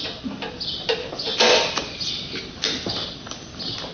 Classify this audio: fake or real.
real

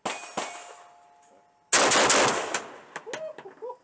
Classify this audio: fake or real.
real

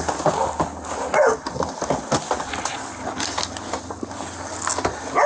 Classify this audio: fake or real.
real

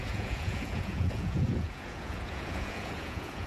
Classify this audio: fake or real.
fake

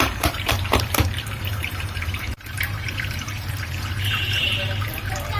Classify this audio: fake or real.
fake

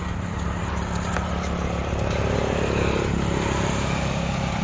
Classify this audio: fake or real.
real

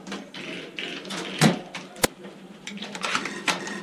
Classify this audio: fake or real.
fake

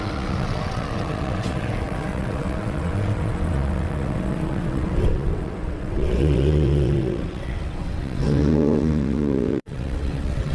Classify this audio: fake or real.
fake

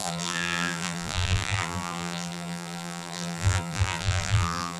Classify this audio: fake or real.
fake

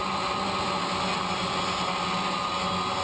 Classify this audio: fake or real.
real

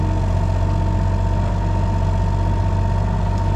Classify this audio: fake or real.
real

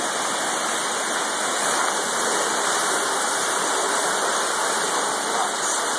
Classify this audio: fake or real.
real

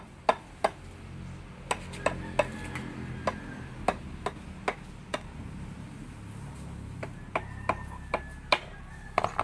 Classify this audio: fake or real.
real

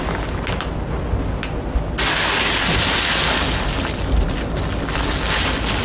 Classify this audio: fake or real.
real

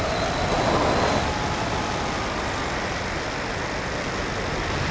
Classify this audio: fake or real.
real